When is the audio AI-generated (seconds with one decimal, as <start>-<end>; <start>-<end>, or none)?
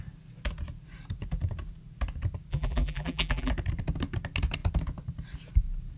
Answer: 2.5-3.5